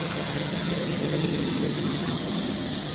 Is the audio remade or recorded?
remade